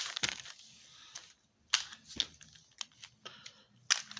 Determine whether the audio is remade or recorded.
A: recorded